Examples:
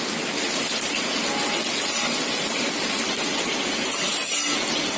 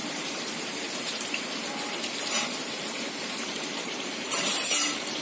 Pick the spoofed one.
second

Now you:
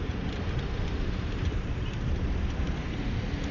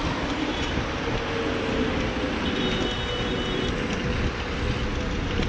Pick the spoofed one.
first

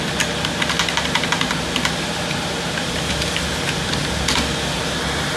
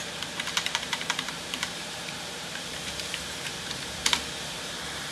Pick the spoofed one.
second